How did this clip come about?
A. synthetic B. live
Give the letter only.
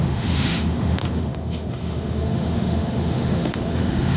A